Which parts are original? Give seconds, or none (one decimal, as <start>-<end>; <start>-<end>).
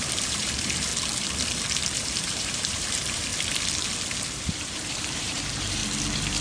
0.9-1.8; 3.3-4.3; 5.8-6.4